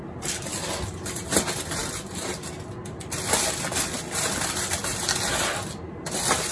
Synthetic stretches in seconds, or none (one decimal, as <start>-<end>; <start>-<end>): none